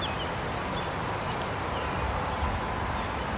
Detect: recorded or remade recorded